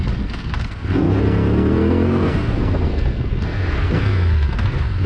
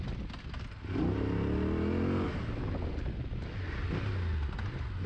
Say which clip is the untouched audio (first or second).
second